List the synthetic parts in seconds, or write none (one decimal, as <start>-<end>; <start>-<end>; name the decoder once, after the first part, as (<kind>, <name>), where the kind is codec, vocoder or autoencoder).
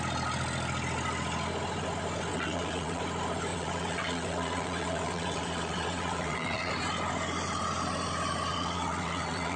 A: 2.3-3.0 (vocoder, WaveNeXt); 3.5-6.7; 8.5-9.6